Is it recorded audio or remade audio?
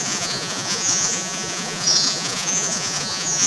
remade